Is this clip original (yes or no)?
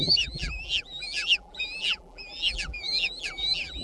no